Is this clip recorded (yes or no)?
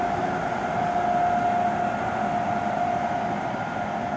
yes